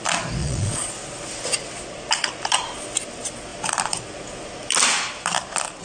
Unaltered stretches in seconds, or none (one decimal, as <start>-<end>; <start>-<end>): 0.0-0.4; 0.9-5.8